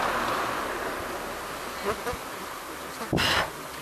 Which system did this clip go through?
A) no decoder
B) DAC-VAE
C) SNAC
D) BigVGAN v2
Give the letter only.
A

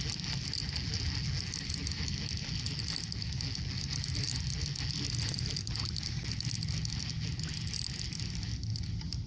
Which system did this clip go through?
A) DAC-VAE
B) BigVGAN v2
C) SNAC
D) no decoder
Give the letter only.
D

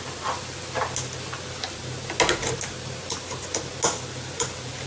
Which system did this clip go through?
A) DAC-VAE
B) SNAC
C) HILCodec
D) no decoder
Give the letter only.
D